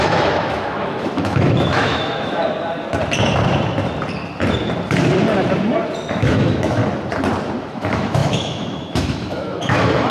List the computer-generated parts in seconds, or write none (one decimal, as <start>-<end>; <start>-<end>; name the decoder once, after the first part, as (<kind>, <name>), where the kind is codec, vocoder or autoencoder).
0.0-2.4 (autoencoder, DAC-VAE); 6.1-6.8; 7.6-10.1